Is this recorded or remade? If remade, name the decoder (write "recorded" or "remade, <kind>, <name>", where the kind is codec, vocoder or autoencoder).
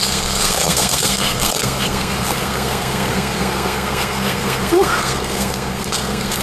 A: remade, codec, SNAC